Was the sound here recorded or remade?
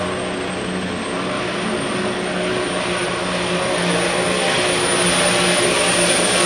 recorded